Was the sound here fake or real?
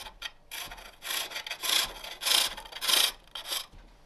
real